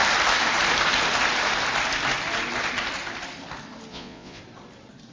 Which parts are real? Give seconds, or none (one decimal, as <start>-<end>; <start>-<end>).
0.0-3.9; 4.4-5.1